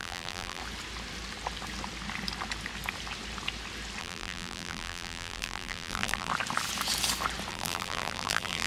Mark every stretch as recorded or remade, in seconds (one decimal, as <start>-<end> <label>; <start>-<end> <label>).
0.0-0.6 remade; 0.6-4.0 recorded; 4.0-6.3 remade; 6.3-7.5 recorded; 7.5-8.7 remade